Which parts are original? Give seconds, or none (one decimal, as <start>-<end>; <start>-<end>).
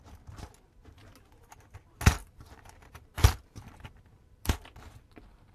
0.0-2.2; 4.5-5.5